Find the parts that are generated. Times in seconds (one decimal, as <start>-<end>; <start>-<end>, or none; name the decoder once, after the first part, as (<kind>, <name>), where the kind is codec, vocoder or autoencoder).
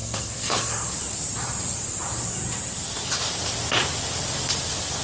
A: 0.0-0.9 (codec, SNAC)